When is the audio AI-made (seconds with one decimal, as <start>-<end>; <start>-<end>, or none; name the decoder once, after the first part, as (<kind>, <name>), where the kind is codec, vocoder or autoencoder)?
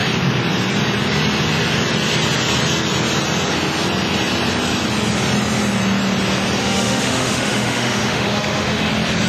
6.6-8.9 (autoencoder, DAC-VAE)